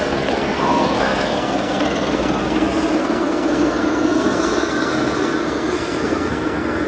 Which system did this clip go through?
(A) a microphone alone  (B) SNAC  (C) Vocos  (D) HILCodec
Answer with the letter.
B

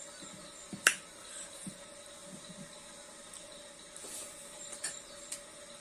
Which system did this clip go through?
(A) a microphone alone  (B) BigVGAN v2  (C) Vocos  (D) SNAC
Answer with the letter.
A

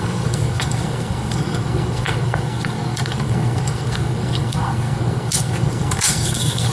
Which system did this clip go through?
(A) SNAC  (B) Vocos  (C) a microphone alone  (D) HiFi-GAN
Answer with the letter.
A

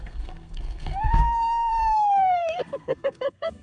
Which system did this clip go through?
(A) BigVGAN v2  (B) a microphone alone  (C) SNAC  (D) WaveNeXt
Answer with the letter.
C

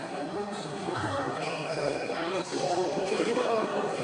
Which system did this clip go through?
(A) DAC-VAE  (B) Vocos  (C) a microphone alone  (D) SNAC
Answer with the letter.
D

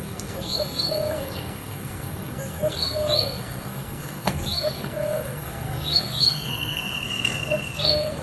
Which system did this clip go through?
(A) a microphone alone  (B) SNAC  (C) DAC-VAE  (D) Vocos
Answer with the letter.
B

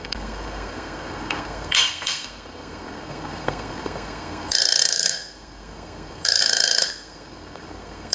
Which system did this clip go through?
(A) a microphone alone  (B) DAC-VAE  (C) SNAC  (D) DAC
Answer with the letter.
C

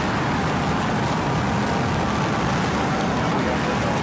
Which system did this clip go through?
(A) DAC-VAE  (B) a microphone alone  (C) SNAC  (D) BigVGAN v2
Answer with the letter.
B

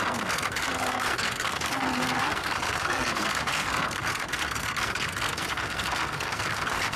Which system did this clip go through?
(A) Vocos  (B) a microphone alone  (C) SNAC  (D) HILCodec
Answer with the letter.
C